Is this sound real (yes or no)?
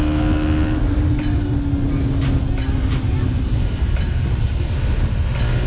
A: yes